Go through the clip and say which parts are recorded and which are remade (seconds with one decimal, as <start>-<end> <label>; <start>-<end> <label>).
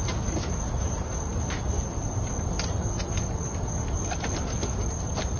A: 0.0-5.4 recorded